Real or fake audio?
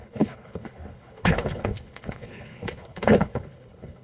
fake